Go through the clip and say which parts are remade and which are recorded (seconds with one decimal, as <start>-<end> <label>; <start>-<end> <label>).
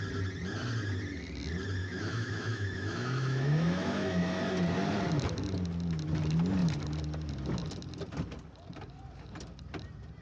0.0-1.8 recorded; 1.8-4.4 remade; 4.4-10.2 recorded